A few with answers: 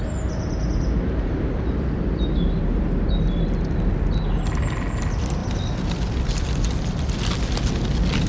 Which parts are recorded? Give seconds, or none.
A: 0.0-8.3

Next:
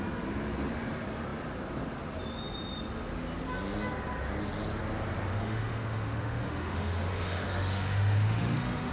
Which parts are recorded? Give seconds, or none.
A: 0.0-5.3

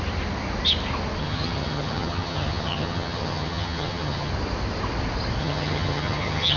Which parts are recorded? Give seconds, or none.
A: 0.0-1.2; 4.3-5.4

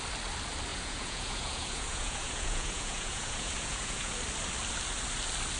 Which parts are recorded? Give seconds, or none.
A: 0.0-0.7; 4.1-5.6

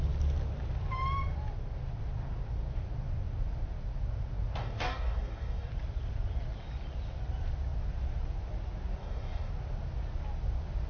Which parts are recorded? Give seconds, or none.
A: 0.0-4.6; 5.7-9.0; 9.5-10.9

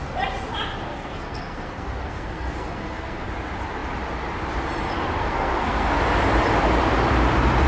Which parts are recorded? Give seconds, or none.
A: 0.0-0.9; 3.3-5.2; 5.9-7.7

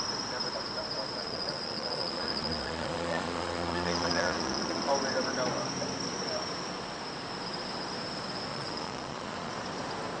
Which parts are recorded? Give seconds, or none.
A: 0.0-1.2; 4.9-8.5; 9.5-10.2